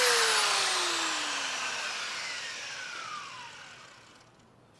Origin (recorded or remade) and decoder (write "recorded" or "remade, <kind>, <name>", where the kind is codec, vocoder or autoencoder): remade, vocoder, BigVGAN v2